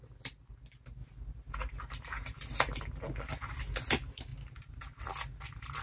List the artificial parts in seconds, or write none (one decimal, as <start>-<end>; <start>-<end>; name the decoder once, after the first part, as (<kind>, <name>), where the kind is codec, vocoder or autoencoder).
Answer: none